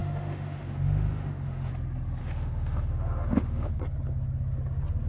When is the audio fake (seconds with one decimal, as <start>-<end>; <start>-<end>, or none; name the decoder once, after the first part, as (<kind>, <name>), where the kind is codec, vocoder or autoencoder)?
0.0-1.7 (autoencoder, DAC-VAE); 2.2-3.7